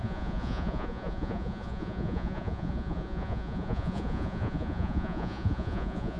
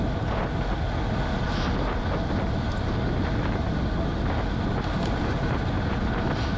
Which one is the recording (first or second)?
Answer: second